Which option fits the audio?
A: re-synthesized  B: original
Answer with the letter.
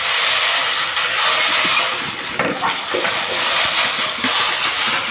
B